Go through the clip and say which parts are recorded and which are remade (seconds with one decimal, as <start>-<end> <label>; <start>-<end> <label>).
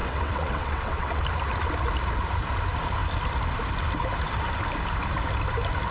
0.0-1.2 remade; 1.2-5.9 recorded